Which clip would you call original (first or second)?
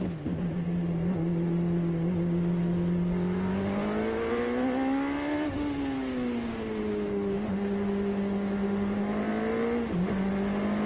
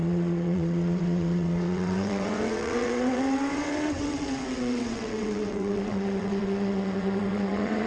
first